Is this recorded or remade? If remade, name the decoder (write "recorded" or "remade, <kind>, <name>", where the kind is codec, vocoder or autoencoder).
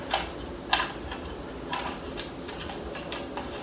recorded